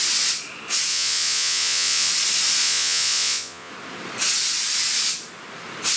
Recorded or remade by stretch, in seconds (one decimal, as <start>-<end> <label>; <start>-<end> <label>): 0.0-0.9 recorded; 0.9-2.1 remade; 2.1-2.6 recorded; 2.6-3.7 remade; 3.7-6.0 recorded